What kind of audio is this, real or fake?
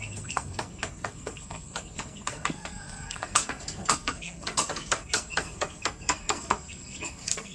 fake